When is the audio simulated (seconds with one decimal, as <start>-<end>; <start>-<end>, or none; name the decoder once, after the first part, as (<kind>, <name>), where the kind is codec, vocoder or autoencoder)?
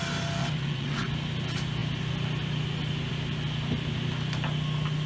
0.4-1.1 (vocoder, WaveNeXt)